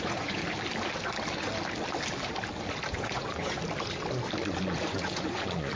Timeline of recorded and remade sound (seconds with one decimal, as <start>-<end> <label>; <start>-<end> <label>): 0.0-0.4 remade; 0.4-2.9 recorded; 2.9-3.6 remade; 3.6-4.6 recorded; 4.6-5.8 remade